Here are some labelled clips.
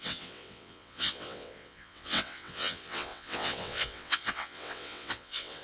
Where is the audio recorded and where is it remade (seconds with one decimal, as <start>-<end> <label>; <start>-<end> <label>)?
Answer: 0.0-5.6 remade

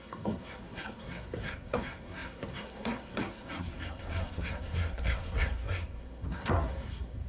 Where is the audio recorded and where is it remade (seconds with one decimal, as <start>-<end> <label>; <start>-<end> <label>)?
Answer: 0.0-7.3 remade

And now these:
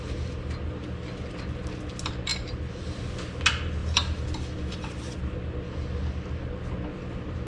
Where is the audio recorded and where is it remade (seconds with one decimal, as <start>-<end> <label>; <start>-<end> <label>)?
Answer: 0.0-3.8 recorded; 3.8-5.2 remade; 5.2-7.5 recorded

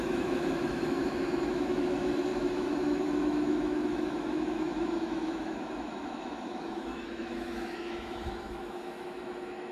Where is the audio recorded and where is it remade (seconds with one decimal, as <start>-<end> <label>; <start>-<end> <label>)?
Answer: 0.0-9.7 remade

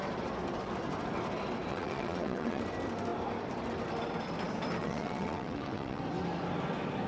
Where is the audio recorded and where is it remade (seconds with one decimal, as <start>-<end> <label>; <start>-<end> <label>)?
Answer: 0.0-1.7 recorded; 1.7-2.6 remade; 2.6-4.8 recorded; 4.8-6.0 remade; 6.0-7.1 recorded

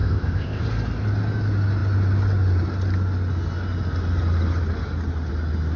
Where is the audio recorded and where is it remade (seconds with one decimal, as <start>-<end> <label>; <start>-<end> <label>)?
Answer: 0.0-0.6 remade; 0.6-5.8 recorded

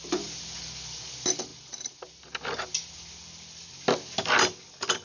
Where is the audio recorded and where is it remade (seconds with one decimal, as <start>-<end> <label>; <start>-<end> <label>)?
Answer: 0.0-5.0 recorded

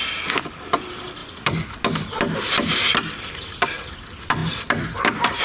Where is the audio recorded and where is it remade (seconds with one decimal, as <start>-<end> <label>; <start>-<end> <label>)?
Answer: 0.0-5.4 recorded